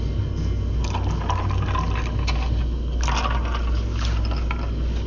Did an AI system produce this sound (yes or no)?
no